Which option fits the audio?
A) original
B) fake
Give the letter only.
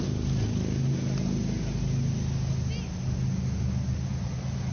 A